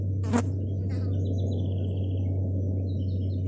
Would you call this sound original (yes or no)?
yes